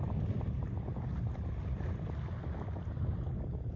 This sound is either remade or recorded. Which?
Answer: recorded